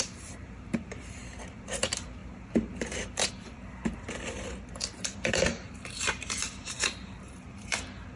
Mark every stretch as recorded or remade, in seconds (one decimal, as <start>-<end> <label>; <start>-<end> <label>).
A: 0.0-8.2 remade